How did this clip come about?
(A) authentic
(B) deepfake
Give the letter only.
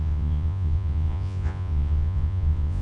B